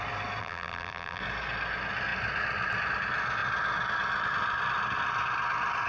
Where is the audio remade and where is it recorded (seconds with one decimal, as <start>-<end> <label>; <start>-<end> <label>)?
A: 0.0-0.4 recorded; 0.4-1.2 remade; 1.2-5.9 recorded